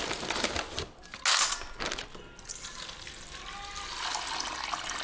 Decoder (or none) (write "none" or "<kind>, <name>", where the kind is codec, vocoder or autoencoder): none